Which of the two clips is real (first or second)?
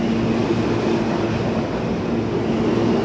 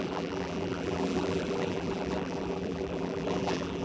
first